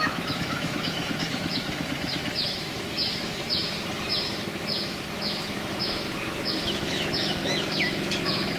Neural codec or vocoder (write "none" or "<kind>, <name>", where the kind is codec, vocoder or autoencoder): autoencoder, DAC-VAE